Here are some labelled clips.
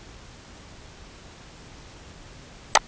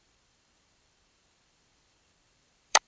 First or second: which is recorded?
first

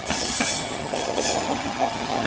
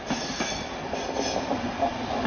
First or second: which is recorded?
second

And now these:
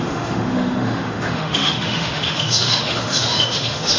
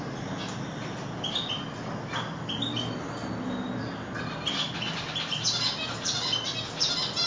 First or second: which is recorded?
second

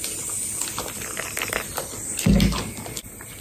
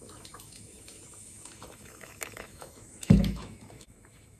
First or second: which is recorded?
first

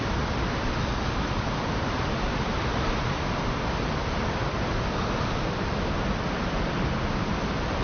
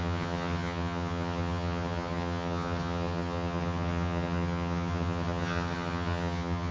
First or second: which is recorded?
first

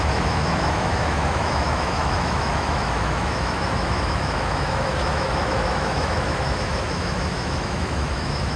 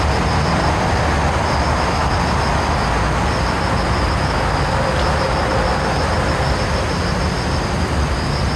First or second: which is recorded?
second